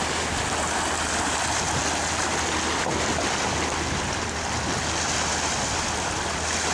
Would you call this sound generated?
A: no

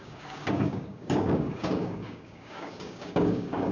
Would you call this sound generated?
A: yes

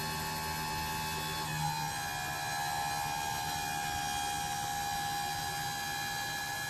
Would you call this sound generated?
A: no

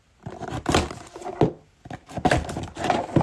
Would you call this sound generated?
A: no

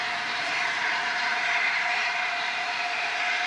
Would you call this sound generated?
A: yes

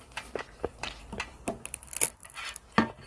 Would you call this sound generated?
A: no